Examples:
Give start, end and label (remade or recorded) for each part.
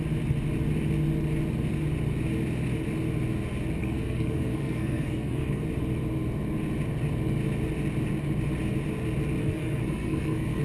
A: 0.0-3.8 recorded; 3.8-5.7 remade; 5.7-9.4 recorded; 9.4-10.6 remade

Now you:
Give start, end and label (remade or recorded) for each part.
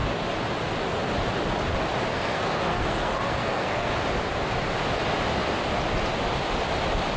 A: 0.0-2.1 recorded; 2.1-3.9 remade; 3.9-7.2 recorded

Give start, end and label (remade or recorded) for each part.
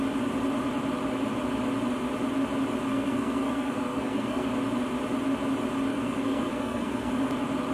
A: 0.0-2.9 recorded; 2.9-4.5 remade; 4.5-5.9 recorded; 5.9-7.1 remade; 7.1-7.7 recorded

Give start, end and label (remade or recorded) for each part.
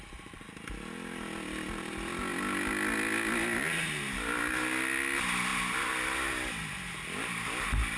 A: 0.0-8.0 recorded